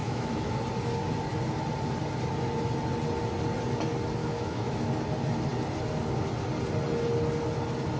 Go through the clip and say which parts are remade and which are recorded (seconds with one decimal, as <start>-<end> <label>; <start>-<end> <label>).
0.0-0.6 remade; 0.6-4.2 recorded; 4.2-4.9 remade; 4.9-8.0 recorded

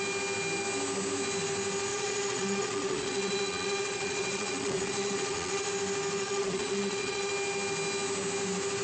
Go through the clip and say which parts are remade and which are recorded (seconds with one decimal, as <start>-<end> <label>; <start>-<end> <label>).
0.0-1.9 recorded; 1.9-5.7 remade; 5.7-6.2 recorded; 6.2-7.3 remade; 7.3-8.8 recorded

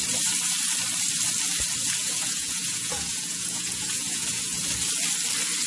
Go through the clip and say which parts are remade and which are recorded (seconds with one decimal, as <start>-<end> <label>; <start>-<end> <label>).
0.0-2.0 recorded; 2.0-4.6 remade; 4.6-5.7 recorded

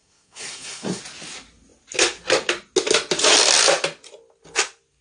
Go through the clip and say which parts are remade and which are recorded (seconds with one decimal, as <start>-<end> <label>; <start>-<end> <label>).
0.0-1.0 remade; 1.0-5.0 recorded